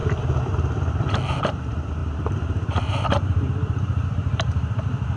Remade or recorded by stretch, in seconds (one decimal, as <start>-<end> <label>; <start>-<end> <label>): 0.0-1.4 recorded; 1.4-5.2 remade